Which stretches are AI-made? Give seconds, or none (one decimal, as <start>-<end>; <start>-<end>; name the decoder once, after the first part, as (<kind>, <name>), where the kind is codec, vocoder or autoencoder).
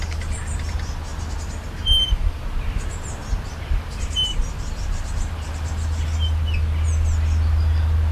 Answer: none